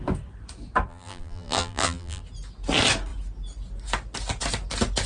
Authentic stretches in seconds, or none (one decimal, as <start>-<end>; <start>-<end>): 0.0-0.9; 2.2-5.1